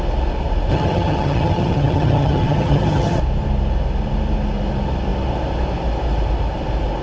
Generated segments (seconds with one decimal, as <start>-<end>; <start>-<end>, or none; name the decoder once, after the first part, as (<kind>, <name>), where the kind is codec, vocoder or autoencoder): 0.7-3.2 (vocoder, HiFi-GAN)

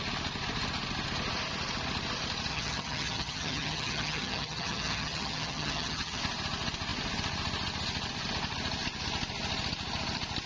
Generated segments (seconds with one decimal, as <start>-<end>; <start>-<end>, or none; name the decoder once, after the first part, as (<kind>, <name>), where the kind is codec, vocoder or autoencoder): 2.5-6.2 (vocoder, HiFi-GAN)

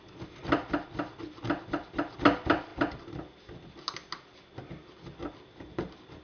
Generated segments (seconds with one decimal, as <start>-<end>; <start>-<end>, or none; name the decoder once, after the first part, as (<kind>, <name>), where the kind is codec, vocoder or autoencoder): none

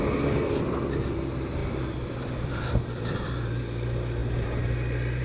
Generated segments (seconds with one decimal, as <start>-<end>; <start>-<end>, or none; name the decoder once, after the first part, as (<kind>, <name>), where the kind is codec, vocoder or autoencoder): none

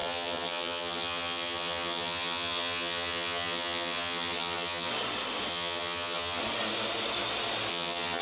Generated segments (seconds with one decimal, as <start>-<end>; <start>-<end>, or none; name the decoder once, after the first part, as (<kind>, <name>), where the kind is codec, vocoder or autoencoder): 0.0-4.9 (vocoder, HiFi-GAN); 5.5-6.4; 7.7-8.2